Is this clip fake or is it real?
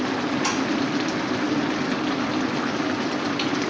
real